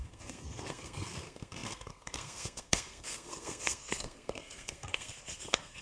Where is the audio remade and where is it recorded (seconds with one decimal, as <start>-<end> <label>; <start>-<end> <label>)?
0.0-5.8 remade